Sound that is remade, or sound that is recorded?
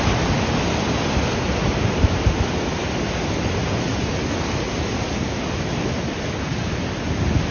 recorded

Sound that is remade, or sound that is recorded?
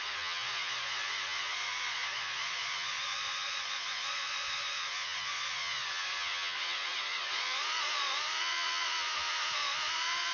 remade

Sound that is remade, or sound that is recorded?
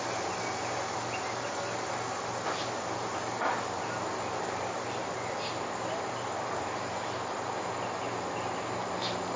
recorded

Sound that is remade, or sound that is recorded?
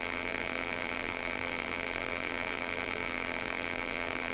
remade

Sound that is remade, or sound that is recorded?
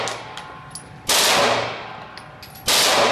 recorded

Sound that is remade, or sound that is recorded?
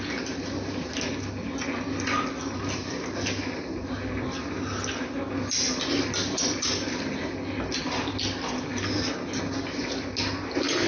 recorded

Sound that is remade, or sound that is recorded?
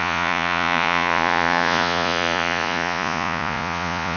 remade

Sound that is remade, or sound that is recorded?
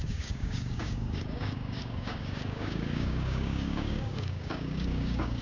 remade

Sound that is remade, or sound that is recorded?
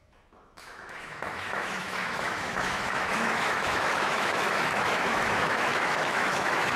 remade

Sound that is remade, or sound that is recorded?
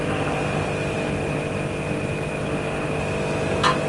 recorded